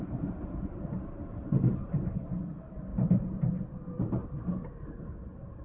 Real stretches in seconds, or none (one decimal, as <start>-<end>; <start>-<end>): 2.9-3.7